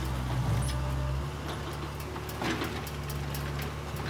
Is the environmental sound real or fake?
real